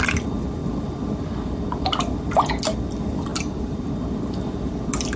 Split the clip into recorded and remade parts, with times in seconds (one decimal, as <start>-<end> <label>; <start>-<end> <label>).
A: 0.0-3.3 recorded; 3.3-3.9 remade; 3.9-5.2 recorded